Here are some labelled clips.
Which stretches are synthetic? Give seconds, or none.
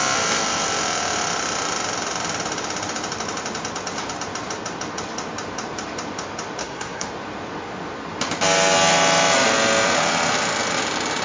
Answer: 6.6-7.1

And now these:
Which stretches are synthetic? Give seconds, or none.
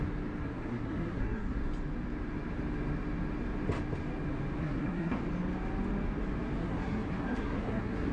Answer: 0.4-1.6; 4.6-5.2; 6.6-8.1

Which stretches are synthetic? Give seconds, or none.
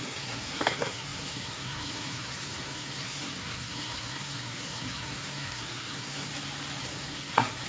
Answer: 0.0-6.3; 6.8-7.7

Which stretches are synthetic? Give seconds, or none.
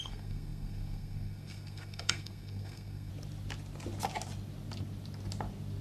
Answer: 0.0-3.1